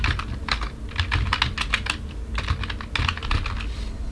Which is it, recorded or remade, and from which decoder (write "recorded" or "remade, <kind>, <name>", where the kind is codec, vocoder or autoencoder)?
recorded